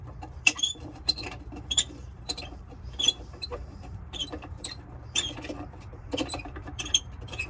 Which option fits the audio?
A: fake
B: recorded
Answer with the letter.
A